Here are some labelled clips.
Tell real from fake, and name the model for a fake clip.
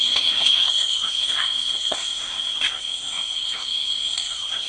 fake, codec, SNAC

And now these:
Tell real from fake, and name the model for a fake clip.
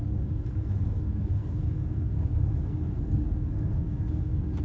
fake, codec, SNAC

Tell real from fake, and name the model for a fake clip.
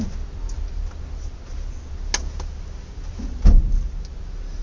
real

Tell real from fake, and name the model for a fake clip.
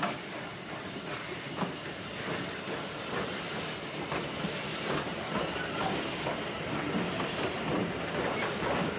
real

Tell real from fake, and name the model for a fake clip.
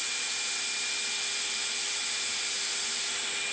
real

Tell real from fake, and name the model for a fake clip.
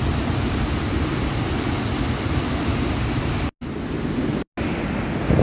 real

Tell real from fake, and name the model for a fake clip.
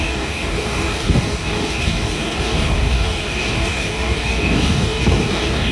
fake, codec, DAC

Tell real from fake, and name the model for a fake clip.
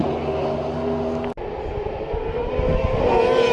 real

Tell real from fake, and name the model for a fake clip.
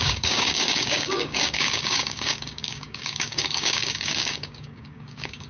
fake, codec, DAC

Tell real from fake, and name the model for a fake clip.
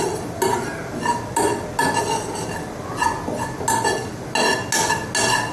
real